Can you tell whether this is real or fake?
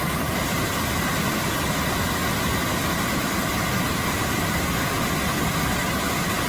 real